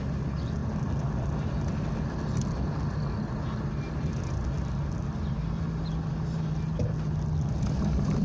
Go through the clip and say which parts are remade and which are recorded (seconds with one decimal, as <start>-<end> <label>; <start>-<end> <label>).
0.0-8.2 recorded